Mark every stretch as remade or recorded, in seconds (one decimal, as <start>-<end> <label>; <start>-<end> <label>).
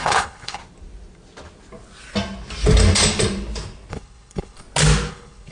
0.0-0.6 remade; 0.6-3.9 recorded; 3.9-4.6 remade; 4.6-5.1 recorded; 5.1-5.5 remade